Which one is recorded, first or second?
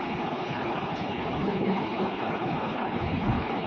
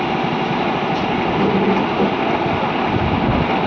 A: second